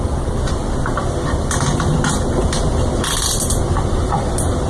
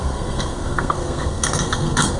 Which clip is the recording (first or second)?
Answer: first